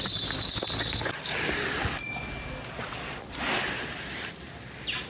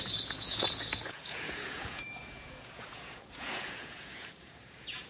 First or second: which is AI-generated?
second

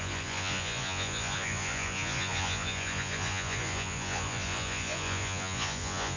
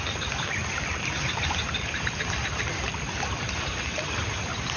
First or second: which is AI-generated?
first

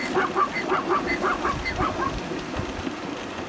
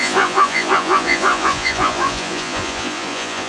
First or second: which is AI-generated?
second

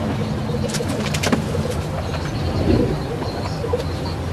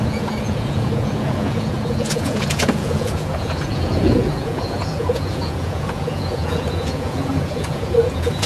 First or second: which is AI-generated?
second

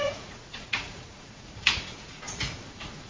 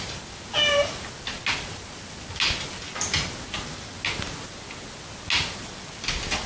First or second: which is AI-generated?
first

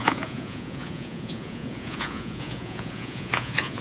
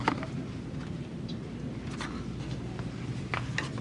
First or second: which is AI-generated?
first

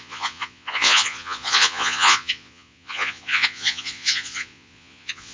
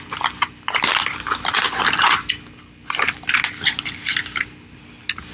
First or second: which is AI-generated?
first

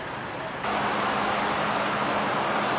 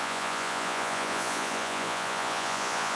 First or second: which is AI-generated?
second